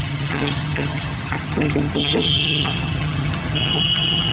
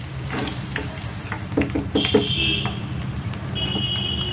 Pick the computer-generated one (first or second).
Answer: first